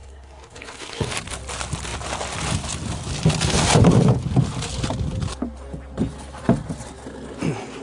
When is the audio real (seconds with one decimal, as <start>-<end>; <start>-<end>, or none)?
1.1-7.8